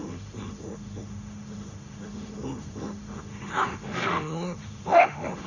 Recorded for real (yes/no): no